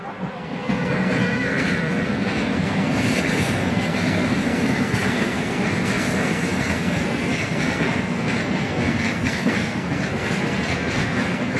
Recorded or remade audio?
remade